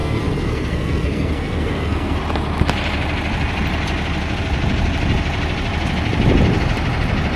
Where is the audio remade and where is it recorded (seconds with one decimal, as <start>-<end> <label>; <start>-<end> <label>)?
0.0-2.2 remade; 2.2-7.4 recorded